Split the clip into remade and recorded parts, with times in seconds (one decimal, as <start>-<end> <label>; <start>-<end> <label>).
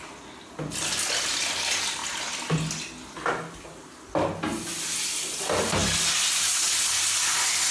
0.0-7.7 recorded